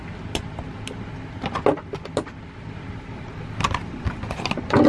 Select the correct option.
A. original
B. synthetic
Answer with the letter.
A